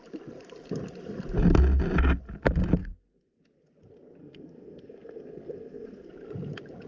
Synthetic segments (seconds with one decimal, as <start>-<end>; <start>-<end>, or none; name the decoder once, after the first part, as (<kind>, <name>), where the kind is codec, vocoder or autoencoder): 2.8-3.4 (codec, SNAC); 4.2-6.1